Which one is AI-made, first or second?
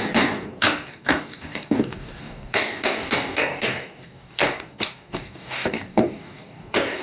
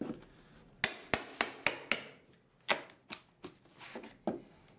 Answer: first